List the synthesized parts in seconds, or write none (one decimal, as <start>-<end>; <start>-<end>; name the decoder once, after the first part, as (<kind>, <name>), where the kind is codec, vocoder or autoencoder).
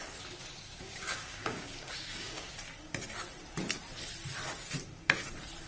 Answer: 0.5-2.5 (codec, DAC)